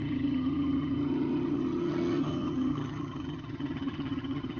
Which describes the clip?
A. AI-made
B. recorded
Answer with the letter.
A